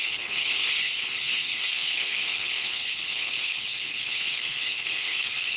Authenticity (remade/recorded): remade